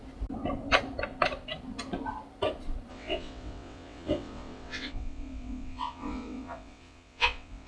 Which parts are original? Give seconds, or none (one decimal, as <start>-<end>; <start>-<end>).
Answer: 0.0-2.9